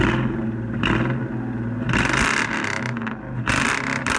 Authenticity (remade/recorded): recorded